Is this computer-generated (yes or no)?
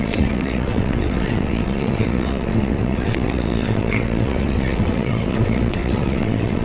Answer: yes